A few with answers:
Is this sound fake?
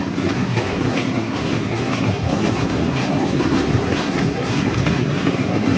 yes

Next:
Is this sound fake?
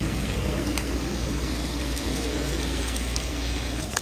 yes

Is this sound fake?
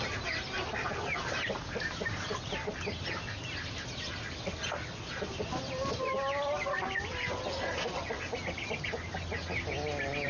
no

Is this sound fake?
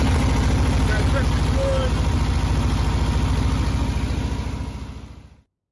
no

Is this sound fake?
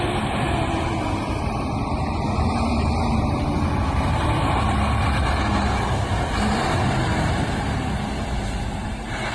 yes